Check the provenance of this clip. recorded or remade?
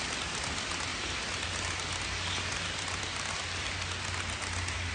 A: recorded